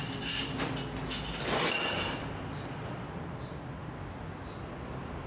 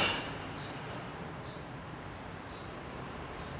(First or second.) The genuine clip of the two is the first